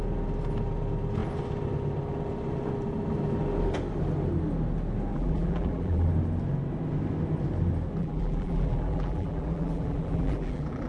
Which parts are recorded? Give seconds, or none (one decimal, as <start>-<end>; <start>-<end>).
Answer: 0.0-5.1; 6.1-8.0